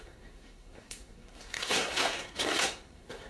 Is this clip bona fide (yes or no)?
no